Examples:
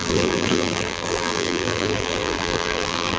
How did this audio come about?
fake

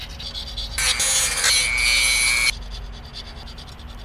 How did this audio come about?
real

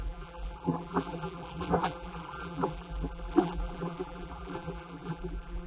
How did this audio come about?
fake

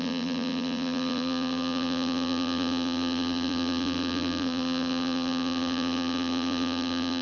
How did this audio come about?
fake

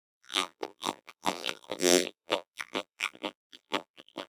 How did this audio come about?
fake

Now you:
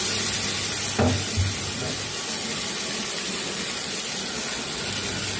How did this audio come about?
real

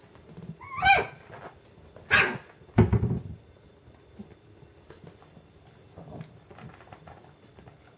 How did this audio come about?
real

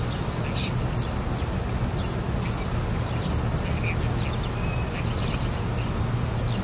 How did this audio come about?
real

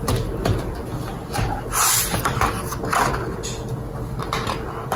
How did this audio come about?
real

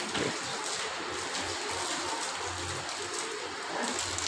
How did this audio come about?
real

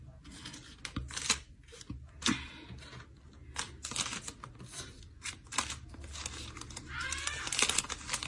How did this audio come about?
real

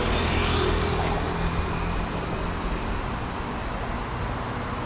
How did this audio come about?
real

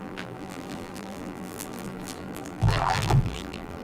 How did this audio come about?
fake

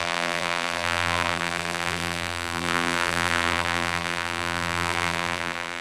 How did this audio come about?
fake